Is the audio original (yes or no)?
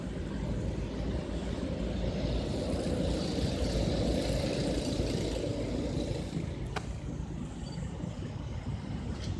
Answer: yes